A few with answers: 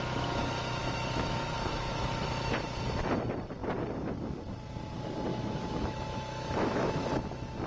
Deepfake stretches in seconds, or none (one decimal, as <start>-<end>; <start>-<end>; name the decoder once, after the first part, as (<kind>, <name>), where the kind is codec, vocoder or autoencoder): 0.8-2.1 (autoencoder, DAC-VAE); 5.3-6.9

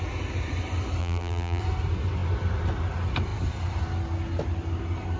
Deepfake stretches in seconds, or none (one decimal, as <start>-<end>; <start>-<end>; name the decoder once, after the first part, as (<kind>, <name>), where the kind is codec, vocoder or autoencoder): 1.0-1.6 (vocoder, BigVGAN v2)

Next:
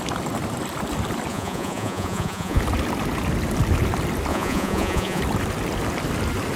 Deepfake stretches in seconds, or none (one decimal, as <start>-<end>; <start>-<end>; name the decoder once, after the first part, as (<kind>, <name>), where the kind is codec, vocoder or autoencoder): 1.3-2.6 (vocoder, Vocos); 4.3-5.2

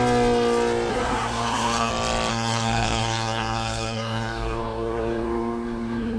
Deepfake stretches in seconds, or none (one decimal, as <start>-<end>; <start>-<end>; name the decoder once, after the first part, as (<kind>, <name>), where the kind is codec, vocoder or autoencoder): 0.9-1.9 (codec, SNAC); 2.3-6.2

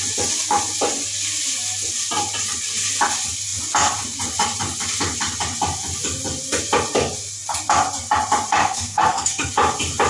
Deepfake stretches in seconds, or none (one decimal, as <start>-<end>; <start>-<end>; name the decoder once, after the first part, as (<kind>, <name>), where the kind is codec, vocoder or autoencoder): 8.6-9.5 (codec, SNAC)